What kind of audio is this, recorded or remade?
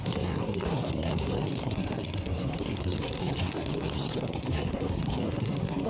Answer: remade